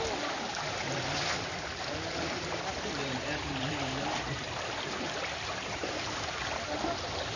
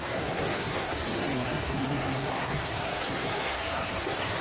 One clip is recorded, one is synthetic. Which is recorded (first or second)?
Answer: first